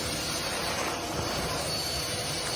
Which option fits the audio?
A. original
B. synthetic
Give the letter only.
A